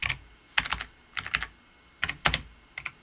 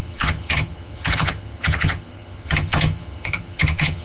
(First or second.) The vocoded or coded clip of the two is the second